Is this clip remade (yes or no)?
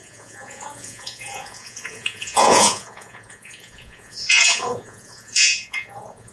yes